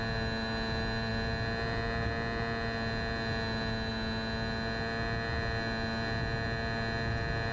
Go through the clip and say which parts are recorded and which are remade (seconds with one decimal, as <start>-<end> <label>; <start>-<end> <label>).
0.0-7.5 recorded